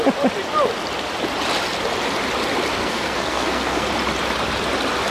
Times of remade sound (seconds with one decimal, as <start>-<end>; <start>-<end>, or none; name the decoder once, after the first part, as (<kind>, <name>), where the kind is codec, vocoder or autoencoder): 2.8-3.9 (codec, SNAC)